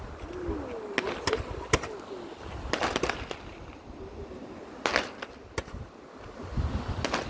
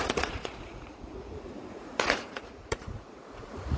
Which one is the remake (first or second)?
second